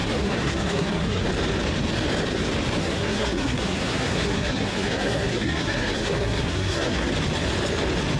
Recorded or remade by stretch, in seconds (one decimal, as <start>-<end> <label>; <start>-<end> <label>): 0.0-1.2 remade; 1.2-2.8 recorded; 2.8-7.1 remade; 7.1-8.2 recorded